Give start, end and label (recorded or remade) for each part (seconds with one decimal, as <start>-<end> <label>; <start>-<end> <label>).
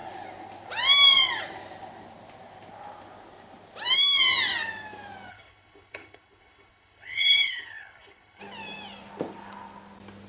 0.0-5.3 recorded; 5.3-8.4 remade; 8.4-10.3 recorded